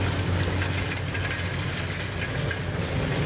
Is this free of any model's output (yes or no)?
yes